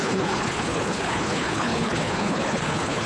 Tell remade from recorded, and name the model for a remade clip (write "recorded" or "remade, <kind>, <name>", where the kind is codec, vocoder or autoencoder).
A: remade, codec, HILCodec